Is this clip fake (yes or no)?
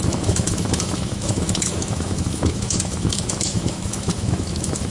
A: yes